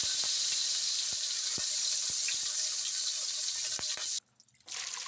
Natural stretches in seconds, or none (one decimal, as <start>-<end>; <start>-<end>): 2.0-4.4